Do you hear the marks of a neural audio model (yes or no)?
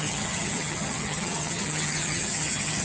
yes